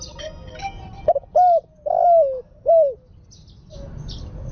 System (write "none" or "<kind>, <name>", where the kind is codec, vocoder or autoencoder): none